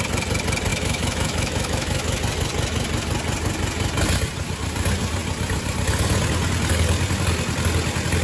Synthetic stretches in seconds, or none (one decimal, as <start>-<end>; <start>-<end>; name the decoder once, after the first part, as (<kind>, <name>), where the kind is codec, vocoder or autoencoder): 0.7-2.2 (autoencoder, DAC-VAE)